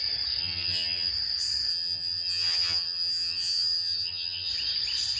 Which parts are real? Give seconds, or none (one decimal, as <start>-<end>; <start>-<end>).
0.0-0.4; 1.1-1.7; 4.5-5.2